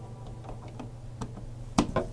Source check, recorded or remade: recorded